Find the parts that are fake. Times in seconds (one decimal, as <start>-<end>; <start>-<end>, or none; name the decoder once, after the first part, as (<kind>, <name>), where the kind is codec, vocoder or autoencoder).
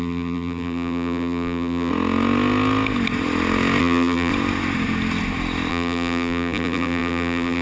0.0-1.9 (vocoder, BigVGAN v2); 3.8-4.3; 5.7-7.6